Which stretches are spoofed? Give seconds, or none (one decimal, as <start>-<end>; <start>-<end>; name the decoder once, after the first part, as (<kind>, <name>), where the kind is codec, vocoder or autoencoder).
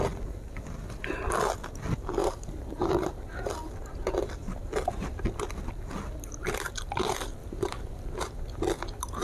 2.2-3.2 (vocoder, BigVGAN v2); 7.4-8.4